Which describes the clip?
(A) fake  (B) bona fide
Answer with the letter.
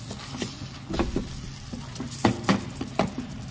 B